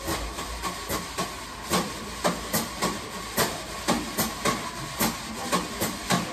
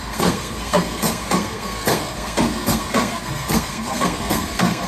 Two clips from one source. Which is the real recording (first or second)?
first